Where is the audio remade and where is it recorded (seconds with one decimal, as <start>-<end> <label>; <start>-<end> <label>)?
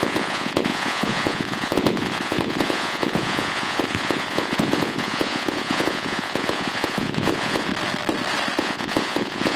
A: 0.0-7.7 remade; 7.7-8.6 recorded; 8.6-9.6 remade